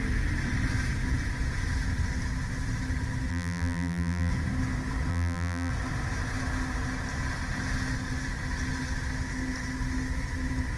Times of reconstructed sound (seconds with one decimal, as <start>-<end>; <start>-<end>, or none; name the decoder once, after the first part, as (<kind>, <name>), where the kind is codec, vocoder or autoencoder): 3.3-4.3 (vocoder, BigVGAN v2); 5.1-5.7